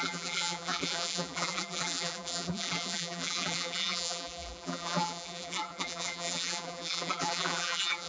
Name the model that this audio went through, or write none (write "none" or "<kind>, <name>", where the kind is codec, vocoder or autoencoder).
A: vocoder, BigVGAN v2